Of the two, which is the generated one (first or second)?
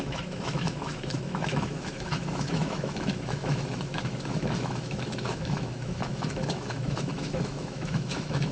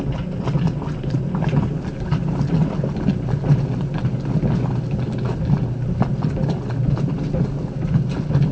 first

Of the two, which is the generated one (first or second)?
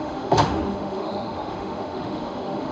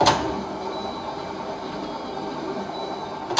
first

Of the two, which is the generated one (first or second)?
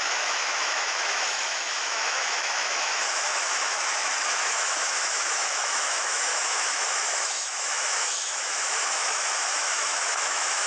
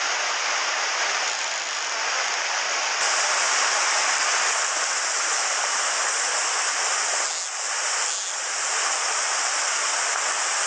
first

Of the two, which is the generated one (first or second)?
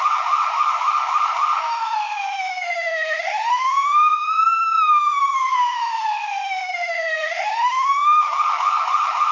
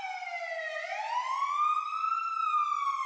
first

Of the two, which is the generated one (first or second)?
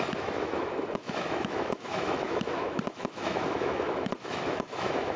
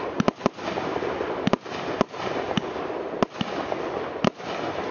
first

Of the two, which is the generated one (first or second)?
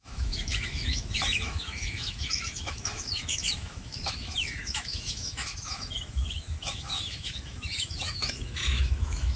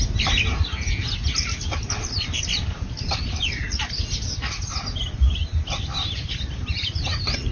first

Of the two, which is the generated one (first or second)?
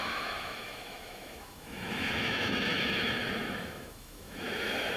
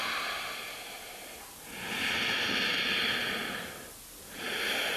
first